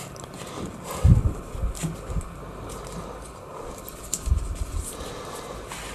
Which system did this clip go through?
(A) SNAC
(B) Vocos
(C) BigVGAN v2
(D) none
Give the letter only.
D